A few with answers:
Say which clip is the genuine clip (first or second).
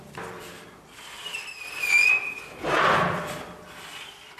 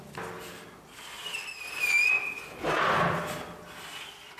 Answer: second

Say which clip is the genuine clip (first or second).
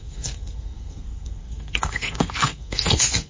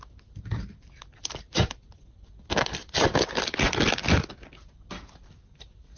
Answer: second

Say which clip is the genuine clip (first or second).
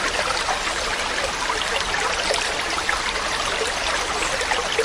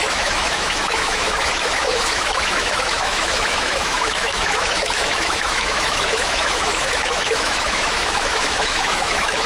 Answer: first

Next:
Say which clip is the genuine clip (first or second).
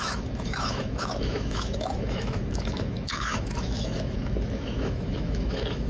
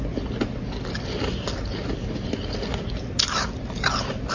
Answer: second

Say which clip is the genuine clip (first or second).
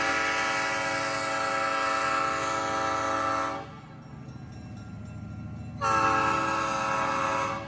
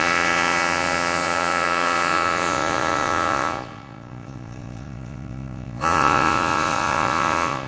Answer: first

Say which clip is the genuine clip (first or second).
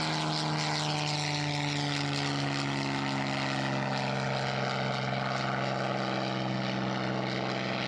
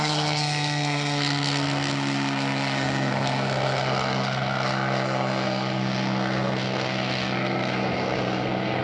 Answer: first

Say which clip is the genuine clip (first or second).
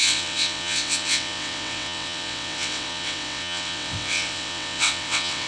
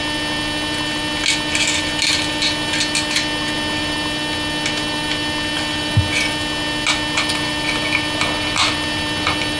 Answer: second